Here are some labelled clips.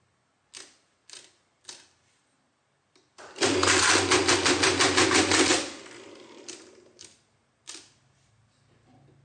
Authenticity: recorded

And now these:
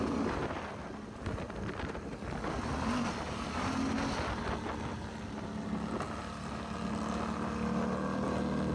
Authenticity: recorded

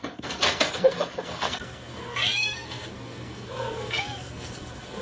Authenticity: remade